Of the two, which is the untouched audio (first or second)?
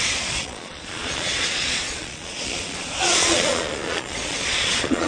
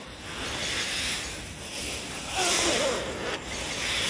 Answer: second